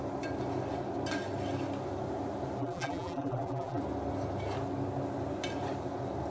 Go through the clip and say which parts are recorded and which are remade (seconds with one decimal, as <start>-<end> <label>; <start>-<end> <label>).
0.0-2.6 recorded; 2.6-3.8 remade; 3.8-6.3 recorded